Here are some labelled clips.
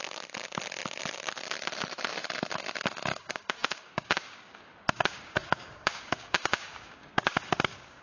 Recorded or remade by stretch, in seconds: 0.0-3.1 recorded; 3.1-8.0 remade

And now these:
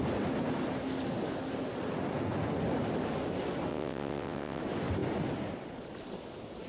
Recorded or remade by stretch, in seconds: 0.0-3.7 recorded; 3.7-4.6 remade; 4.6-6.7 recorded